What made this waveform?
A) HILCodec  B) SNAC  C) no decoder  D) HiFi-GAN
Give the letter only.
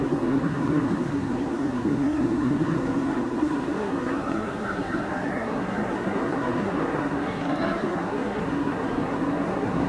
B